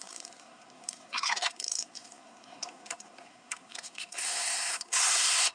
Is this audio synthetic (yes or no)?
yes